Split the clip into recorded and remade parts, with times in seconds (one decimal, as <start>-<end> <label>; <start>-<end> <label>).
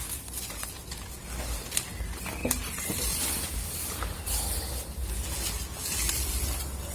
0.0-2.4 recorded; 2.4-4.5 remade; 4.5-6.9 recorded